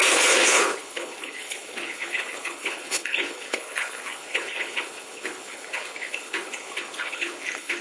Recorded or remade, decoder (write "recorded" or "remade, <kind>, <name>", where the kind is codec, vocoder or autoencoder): remade, codec, HILCodec